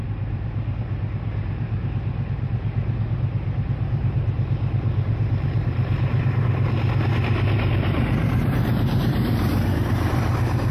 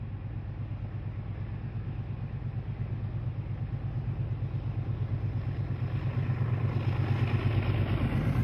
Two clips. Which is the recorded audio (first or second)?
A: second